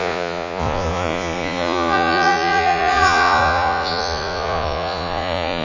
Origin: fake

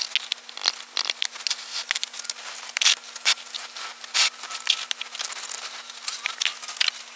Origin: real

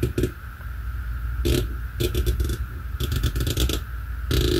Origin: real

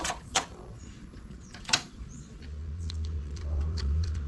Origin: fake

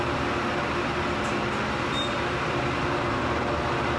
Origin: real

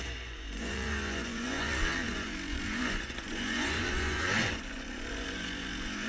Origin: fake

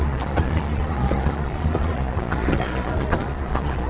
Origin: fake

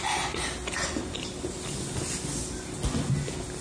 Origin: real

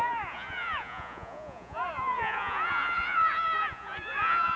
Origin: fake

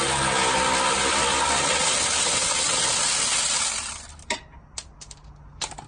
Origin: real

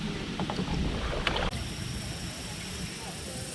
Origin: real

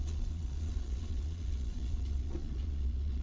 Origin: fake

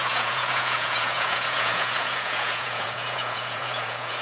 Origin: fake